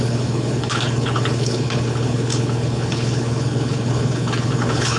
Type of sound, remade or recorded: remade